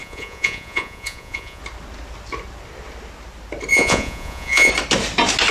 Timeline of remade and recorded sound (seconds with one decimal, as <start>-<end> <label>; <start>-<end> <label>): 0.0-1.6 remade; 1.6-3.7 recorded; 3.7-4.7 remade; 4.7-5.5 recorded